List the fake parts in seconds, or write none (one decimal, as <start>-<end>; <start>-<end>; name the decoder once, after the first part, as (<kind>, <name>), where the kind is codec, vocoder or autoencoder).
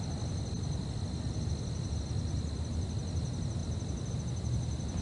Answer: none